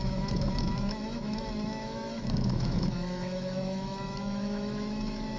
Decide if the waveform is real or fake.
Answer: fake